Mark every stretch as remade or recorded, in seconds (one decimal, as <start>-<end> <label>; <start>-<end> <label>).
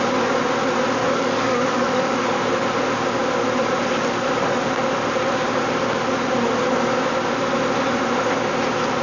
0.0-1.0 recorded; 1.0-2.3 remade; 2.3-9.0 recorded